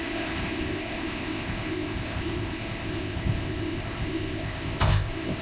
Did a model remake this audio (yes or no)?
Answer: yes